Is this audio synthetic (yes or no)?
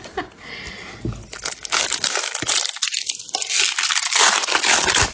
no